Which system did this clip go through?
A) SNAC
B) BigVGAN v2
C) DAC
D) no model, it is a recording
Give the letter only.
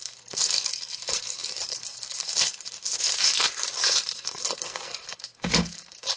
A